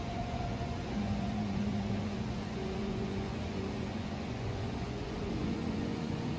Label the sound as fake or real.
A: fake